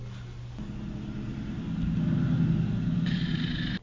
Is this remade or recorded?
recorded